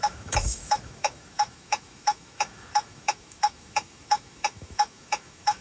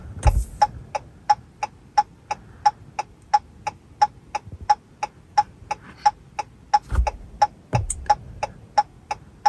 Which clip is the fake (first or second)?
first